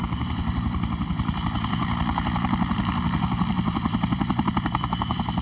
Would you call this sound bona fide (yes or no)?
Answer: no